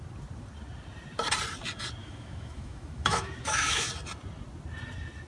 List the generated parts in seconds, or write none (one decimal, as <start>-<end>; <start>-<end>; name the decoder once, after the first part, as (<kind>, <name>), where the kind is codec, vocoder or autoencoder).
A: 2.0-3.9 (autoencoder, DAC-VAE)